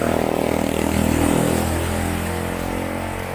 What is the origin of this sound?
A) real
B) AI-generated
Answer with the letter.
A